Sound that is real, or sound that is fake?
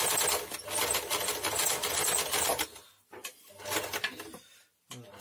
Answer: real